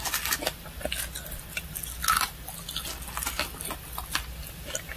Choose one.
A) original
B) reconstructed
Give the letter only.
A